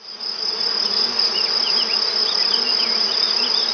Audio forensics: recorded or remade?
recorded